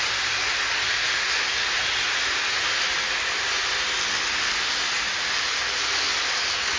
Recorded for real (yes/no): yes